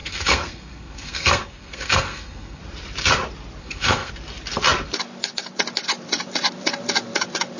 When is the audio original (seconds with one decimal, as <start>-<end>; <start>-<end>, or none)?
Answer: 2.6-3.6; 4.1-7.6